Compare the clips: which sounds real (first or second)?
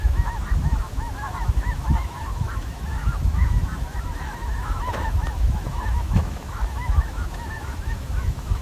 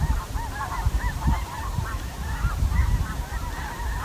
second